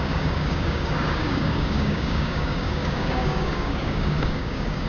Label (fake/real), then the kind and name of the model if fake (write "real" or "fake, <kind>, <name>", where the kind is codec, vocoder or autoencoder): fake, codec, DAC